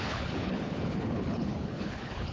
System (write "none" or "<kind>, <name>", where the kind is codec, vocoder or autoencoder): codec, HILCodec